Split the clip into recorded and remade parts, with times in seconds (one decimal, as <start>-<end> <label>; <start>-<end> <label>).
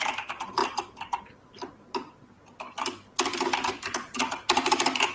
0.0-5.1 recorded